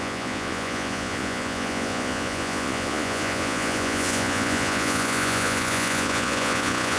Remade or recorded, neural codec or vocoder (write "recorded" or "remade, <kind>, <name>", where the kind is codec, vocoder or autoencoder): remade, vocoder, Vocos